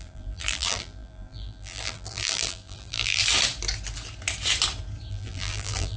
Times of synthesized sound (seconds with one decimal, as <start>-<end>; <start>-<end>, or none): 0.0-3.2; 5.1-6.0